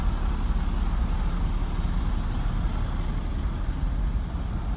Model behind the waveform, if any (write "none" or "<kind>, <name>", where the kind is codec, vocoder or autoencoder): none